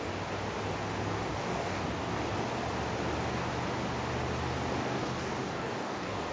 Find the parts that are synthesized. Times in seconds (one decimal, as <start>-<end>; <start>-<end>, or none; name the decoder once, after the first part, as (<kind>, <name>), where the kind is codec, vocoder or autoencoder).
1.3-2.1 (codec, DAC); 4.8-6.3